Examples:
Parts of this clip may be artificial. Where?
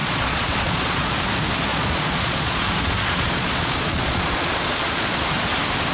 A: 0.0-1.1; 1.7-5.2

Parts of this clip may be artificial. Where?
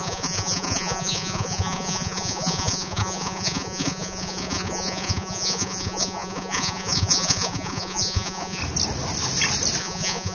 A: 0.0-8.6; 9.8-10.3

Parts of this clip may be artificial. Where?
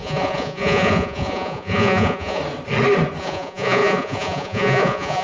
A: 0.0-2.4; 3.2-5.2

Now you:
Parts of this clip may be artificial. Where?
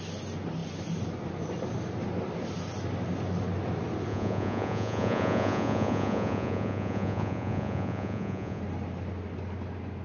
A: 4.1-8.6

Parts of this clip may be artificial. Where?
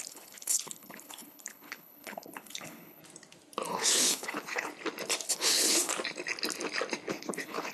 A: 0.0-3.0; 3.7-4.7; 5.3-5.9; 7.1-7.7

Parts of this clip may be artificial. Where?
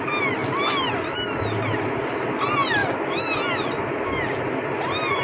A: none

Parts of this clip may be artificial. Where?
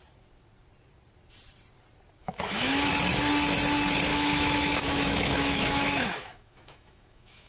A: 2.2-2.9; 4.1-7.5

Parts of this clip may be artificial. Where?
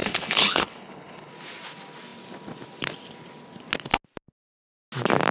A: 0.0-1.3